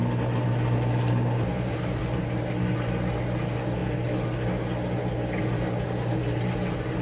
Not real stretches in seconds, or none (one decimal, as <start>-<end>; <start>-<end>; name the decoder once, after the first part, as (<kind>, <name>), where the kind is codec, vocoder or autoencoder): 1.5-2.0 (vocoder, BigVGAN v2)

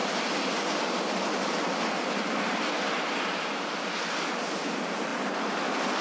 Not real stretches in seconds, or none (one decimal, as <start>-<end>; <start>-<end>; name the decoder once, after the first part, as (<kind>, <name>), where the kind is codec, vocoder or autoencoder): 5.1-6.0 (vocoder, BigVGAN v2)

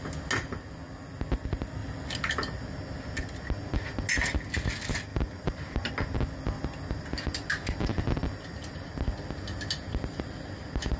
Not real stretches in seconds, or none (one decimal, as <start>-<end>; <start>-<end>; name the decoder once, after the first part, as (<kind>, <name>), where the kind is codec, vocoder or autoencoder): 5.1-5.9 (vocoder, BigVGAN v2); 8.2-8.9

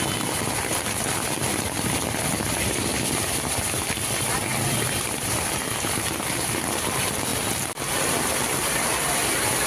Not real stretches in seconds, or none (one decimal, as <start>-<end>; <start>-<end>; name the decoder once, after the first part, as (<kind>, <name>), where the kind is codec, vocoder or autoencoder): none

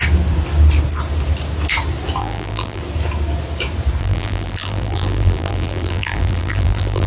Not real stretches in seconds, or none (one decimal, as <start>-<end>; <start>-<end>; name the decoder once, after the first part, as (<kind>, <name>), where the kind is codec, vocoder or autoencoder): 2.2-2.8 (vocoder, BigVGAN v2); 4.0-7.1